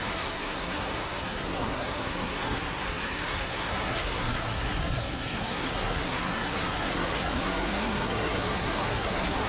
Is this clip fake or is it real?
fake